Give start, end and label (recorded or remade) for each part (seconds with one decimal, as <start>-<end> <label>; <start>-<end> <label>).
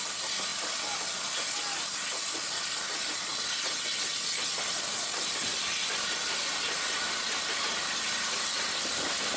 0.0-0.5 remade; 0.5-4.1 recorded; 4.1-9.4 remade